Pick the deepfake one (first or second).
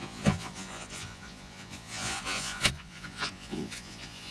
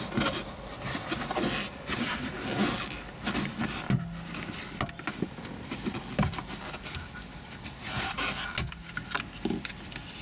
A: first